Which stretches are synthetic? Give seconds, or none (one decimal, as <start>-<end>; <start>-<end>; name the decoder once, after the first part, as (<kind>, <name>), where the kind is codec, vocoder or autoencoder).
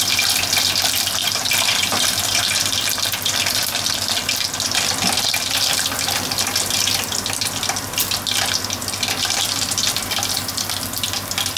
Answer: 1.2-2.4 (vocoder, BigVGAN v2)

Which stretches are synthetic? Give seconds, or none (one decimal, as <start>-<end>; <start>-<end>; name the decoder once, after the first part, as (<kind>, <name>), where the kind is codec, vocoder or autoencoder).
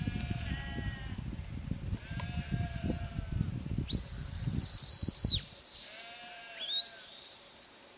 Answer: 2.0-2.9 (vocoder, BigVGAN v2); 4.2-6.0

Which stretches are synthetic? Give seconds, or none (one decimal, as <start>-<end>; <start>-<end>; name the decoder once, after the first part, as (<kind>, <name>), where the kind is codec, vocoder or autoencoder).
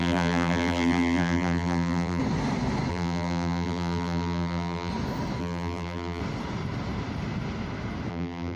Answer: 0.0-2.2 (vocoder, BigVGAN v2); 2.9-4.9; 5.4-6.2; 8.1-8.6